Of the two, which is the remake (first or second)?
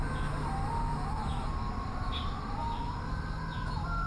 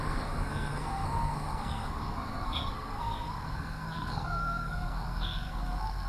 second